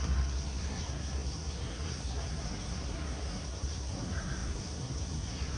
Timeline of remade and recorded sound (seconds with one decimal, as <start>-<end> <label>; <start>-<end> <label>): 0.0-5.6 remade